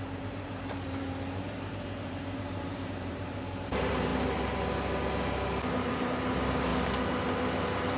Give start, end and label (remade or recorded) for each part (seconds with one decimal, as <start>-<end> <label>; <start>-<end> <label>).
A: 0.0-4.1 remade; 4.1-5.7 recorded; 5.7-6.7 remade; 6.7-8.0 recorded